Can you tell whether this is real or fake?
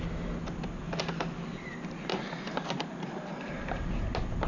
real